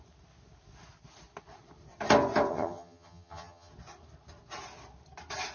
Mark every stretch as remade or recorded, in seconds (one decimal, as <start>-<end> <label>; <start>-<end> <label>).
0.0-2.5 recorded; 2.5-3.7 remade; 3.7-5.5 recorded